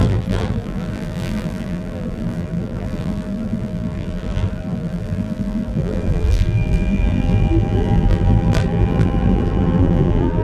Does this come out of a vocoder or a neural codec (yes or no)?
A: yes